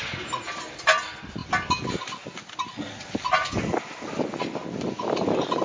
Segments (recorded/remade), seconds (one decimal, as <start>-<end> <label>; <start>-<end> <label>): 0.0-5.6 recorded